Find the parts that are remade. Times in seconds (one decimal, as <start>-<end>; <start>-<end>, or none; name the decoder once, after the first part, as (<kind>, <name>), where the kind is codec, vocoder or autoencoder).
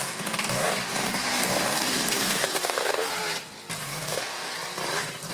0.0-3.1 (codec, DAC); 3.8-4.5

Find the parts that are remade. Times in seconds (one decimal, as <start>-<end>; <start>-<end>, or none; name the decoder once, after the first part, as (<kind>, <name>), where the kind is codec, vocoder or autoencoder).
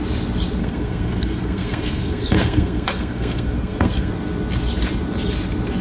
0.6-4.1 (codec, SNAC)